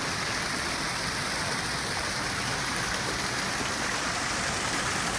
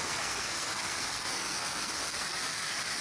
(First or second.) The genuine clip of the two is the first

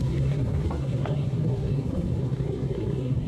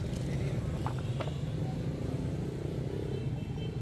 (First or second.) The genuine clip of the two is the second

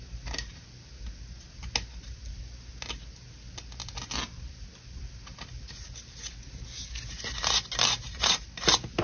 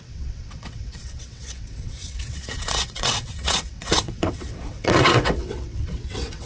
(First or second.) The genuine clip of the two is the first